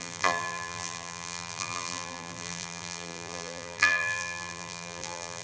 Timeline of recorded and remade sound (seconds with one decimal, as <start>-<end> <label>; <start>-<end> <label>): 0.0-5.4 remade